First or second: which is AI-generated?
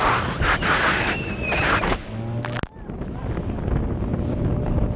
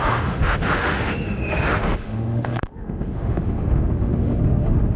second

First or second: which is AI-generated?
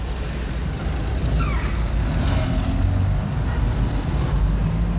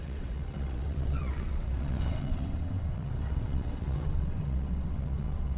second